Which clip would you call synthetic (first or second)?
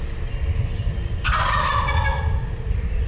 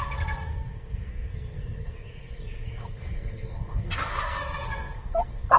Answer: second